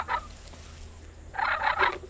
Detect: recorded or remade recorded